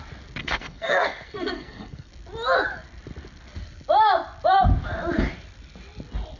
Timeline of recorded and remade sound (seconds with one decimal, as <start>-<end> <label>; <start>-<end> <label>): 0.0-0.4 recorded; 0.4-2.1 remade; 2.1-6.4 recorded

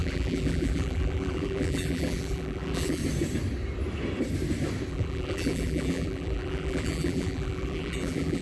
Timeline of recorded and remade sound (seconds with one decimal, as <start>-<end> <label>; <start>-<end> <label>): 0.0-3.0 remade; 3.0-4.9 recorded; 4.9-8.4 remade

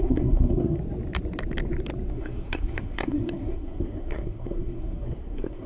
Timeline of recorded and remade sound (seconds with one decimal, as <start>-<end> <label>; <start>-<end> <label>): 0.0-0.8 remade; 0.8-2.1 recorded; 2.1-5.7 remade

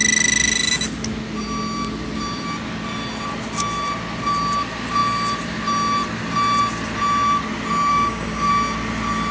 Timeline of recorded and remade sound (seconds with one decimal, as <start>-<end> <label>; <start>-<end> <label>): 0.0-7.9 recorded; 7.9-8.5 remade; 8.5-9.3 recorded

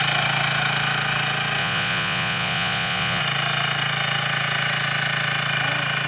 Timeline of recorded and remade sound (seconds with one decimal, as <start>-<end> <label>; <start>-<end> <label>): 0.0-1.6 recorded; 1.6-3.2 remade; 3.2-6.1 recorded